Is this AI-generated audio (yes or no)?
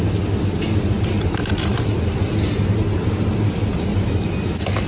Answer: no